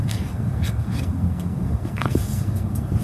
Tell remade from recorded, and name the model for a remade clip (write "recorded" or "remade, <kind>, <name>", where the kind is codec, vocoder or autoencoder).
remade, codec, SNAC